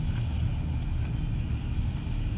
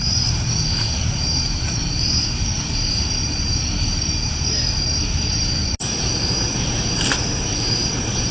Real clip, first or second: first